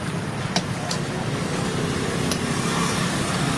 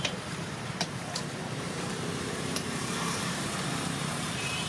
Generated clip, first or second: second